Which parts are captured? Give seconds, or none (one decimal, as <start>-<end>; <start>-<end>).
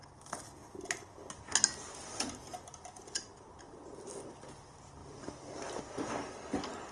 0.0-5.0; 5.8-6.9